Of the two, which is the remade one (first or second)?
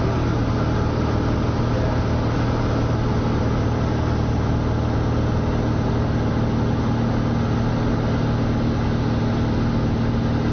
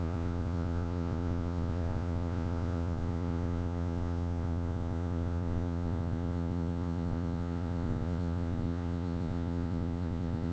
second